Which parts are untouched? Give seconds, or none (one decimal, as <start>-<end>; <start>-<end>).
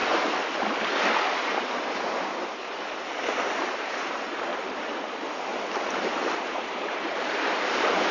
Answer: 0.0-1.3; 5.5-6.4